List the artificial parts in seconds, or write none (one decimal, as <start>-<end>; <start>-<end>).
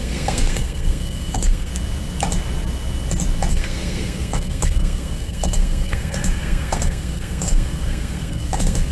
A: 0.0-1.7; 3.5-8.9